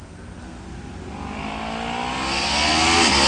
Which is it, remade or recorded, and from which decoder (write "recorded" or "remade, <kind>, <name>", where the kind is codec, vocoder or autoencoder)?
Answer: recorded